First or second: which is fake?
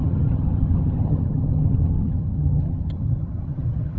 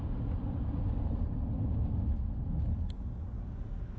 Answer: first